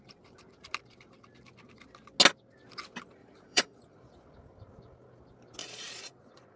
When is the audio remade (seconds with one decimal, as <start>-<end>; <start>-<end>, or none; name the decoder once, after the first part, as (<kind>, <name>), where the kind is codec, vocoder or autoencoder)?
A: 3.2-4.2 (vocoder, Vocos); 5.6-6.6